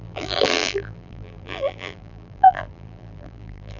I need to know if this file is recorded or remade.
remade